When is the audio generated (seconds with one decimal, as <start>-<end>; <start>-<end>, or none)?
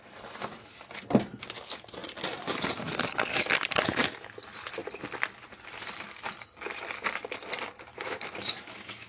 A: 7.9-9.1